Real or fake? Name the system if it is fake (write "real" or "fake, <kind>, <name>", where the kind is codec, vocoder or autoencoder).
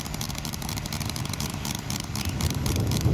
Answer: fake, vocoder, BigVGAN v2